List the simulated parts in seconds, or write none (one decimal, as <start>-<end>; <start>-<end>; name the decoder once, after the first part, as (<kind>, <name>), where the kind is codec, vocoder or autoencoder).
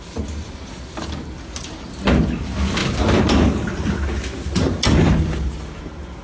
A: none